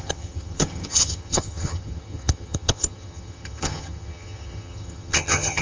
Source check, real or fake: fake